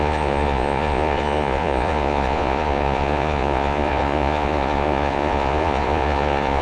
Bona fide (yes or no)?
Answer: no